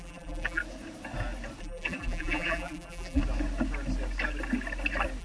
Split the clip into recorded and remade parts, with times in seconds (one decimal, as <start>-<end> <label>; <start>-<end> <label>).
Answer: 0.0-0.6 remade; 0.6-1.6 recorded; 1.6-3.2 remade; 3.2-5.2 recorded